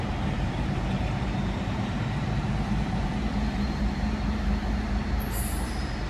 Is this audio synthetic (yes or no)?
yes